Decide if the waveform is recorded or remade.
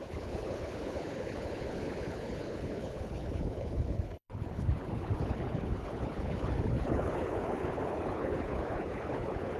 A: remade